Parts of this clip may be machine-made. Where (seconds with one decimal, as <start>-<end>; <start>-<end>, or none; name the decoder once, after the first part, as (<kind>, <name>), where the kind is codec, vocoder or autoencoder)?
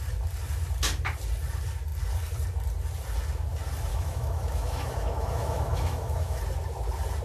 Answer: 3.9-6.4 (autoencoder, DAC-VAE)